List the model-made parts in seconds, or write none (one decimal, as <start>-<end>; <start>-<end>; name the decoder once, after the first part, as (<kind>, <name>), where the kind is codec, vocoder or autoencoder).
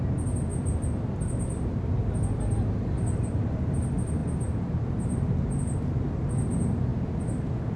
none